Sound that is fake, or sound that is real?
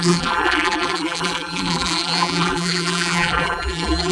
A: fake